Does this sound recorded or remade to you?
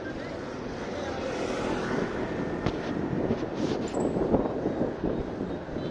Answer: recorded